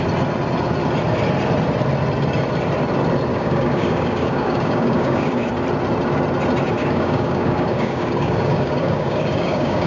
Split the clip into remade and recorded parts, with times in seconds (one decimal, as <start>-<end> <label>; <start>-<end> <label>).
0.0-3.3 recorded; 3.3-5.5 remade; 5.5-6.8 recorded; 6.8-9.9 remade